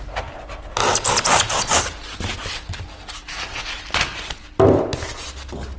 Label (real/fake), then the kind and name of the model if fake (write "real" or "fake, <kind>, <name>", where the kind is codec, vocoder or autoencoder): real